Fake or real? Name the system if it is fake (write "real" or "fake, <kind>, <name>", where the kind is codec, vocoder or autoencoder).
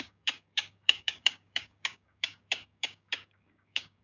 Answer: fake, codec, DAC